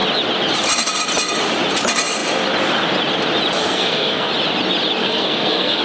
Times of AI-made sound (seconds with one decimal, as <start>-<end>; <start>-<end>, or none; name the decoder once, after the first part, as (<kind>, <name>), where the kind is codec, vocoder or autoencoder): 3.6-4.3 (codec, SNAC); 5.0-5.8